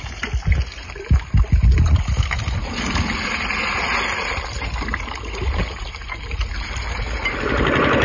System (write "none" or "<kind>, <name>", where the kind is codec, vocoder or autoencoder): none